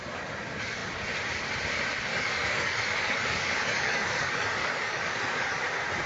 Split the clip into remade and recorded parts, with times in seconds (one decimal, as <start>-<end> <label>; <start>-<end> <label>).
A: 0.0-2.1 recorded; 2.1-5.6 remade; 5.6-6.1 recorded